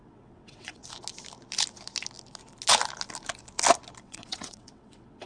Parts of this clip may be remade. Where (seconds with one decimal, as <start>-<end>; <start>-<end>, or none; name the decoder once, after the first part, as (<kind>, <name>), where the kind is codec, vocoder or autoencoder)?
0.0-0.8 (vocoder, WaveNeXt); 4.0-5.3